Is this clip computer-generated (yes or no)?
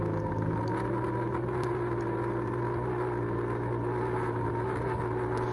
no